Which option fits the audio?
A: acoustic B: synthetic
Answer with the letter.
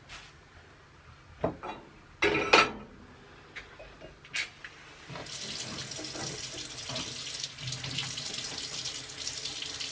A